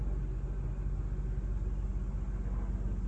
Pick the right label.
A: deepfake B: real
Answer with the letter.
B